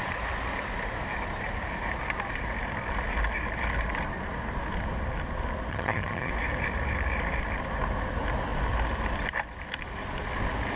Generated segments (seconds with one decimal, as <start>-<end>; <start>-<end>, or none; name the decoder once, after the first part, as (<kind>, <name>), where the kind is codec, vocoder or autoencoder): 5.7-6.3 (vocoder, HiFi-GAN)

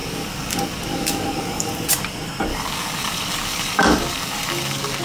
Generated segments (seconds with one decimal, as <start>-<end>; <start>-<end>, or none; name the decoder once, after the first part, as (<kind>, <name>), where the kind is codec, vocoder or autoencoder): 0.0-1.9 (codec, DAC); 2.5-5.0